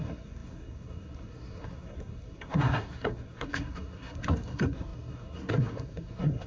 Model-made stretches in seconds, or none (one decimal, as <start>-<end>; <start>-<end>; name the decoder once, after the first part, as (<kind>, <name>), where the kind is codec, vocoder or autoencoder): 0.0-6.5 (codec, SNAC)

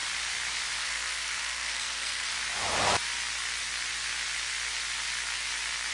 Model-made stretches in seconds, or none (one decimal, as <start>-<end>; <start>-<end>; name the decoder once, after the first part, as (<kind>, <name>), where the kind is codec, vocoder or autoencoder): 0.8-2.3 (codec, SNAC)